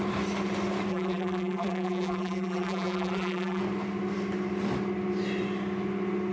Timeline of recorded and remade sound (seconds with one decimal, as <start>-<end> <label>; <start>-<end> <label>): 0.0-0.9 recorded; 0.9-3.6 remade; 3.6-6.3 recorded